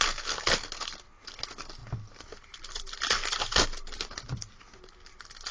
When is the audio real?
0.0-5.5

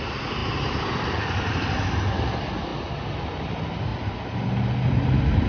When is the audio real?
0.0-5.5